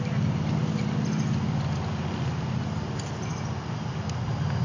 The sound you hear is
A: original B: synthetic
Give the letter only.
A